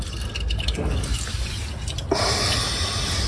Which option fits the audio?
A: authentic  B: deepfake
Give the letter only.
A